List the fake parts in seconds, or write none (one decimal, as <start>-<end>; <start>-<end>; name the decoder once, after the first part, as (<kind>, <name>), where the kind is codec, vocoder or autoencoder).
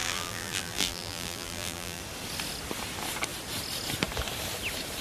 0.0-2.0 (vocoder, BigVGAN v2)